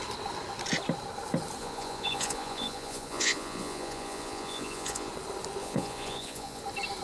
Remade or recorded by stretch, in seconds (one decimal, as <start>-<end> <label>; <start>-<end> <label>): 0.0-1.6 recorded; 1.6-5.1 remade; 5.1-5.6 recorded; 5.6-6.6 remade; 6.6-7.0 recorded